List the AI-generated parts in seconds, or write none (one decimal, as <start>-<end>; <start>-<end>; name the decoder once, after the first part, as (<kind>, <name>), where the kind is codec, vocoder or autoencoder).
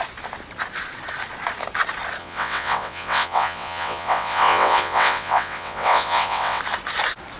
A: 2.2-6.6 (vocoder, WaveNeXt)